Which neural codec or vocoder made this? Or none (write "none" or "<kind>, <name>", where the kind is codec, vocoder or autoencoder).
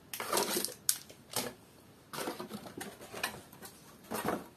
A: none